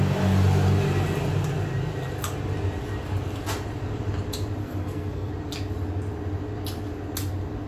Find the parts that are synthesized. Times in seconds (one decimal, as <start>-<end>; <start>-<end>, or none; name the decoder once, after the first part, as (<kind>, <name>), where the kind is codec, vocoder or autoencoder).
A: 4.6-5.3 (codec, SNAC)